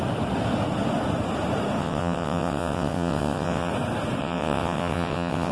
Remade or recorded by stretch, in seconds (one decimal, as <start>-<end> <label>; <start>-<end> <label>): 0.0-1.8 recorded; 1.8-3.7 remade; 3.7-4.2 recorded; 4.2-5.5 remade